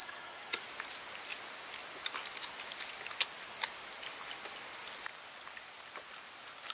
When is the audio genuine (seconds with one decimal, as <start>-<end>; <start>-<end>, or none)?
0.6-6.7